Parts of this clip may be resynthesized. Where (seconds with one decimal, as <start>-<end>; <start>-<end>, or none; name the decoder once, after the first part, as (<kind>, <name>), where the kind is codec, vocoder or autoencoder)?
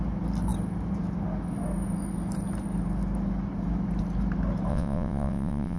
4.7-5.8 (vocoder, WaveNeXt)